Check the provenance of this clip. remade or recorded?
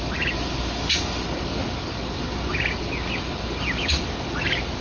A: recorded